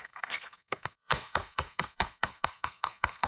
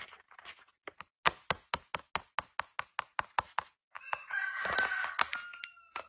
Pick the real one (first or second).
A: second